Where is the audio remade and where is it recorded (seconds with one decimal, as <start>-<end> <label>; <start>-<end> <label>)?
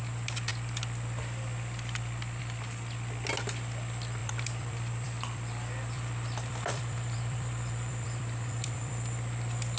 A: 0.0-4.2 recorded; 4.2-8.9 remade; 8.9-9.8 recorded